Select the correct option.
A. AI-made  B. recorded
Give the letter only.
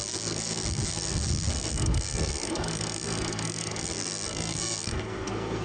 A